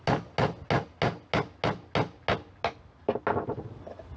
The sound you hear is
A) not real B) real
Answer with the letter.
B